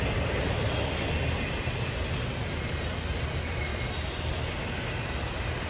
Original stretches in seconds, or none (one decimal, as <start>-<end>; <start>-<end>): 0.0-5.7